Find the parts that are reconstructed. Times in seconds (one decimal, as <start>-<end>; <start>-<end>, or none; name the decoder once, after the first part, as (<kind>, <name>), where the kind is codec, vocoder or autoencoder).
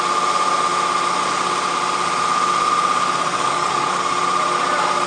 3.3-4.0 (codec, DAC)